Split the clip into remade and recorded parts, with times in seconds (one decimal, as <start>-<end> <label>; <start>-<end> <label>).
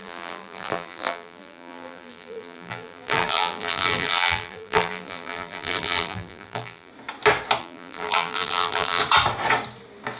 0.0-6.9 remade; 6.9-7.6 recorded; 7.6-9.0 remade; 9.0-10.2 recorded